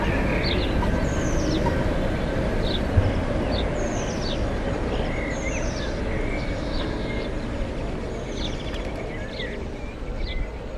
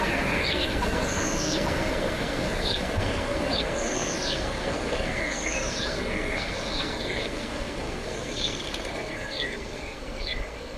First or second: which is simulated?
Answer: second